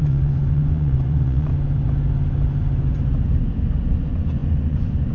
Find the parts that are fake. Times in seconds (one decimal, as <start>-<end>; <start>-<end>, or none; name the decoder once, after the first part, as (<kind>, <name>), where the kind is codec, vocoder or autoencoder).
0.0-1.5 (vocoder, Vocos); 3.8-5.1